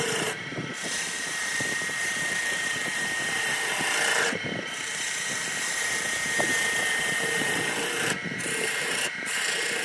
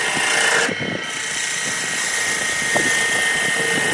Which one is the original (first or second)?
second